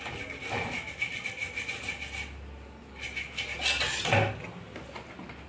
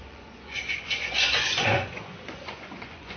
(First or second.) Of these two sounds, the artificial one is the second